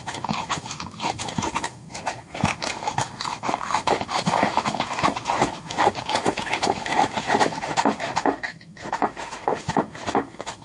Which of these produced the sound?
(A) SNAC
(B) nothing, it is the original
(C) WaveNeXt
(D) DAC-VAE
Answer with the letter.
D